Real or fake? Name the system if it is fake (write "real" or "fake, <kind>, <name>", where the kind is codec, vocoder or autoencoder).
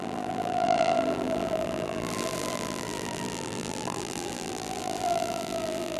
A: fake, vocoder, BigVGAN v2